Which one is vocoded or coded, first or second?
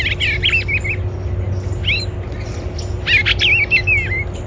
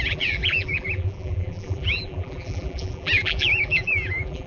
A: second